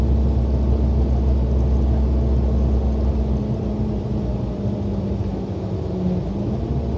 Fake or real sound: real